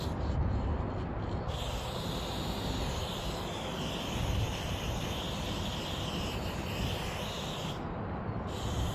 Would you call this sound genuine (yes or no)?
yes